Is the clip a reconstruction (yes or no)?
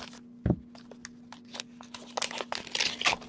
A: no